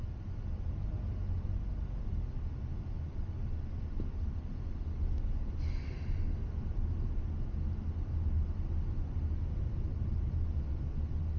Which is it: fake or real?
real